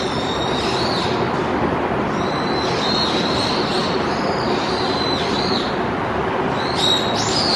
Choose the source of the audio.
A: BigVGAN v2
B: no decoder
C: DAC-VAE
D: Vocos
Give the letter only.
B